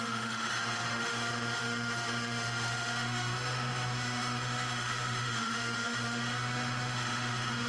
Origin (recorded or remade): remade